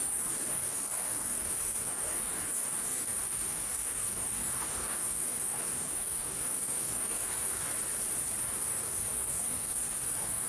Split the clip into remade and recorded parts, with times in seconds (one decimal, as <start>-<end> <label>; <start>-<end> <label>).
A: 0.0-7.7 remade; 7.7-8.4 recorded; 8.4-10.5 remade